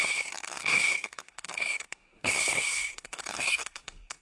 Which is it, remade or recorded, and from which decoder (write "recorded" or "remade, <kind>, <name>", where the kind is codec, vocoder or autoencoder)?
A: remade, codec, SNAC